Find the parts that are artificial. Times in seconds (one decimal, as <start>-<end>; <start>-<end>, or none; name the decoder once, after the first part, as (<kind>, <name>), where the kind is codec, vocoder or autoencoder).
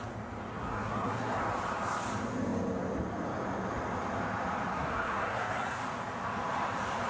0.5-1.4 (codec, SNAC); 4.7-5.8